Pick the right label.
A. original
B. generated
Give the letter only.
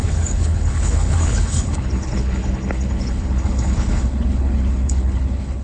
B